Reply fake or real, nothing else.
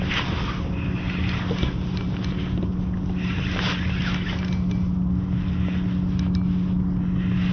real